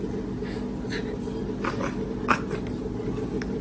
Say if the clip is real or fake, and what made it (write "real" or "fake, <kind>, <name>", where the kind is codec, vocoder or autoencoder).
real